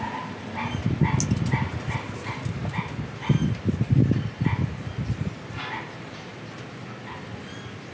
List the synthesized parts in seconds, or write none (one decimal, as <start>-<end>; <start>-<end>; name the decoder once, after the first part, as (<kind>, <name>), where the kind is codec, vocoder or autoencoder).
none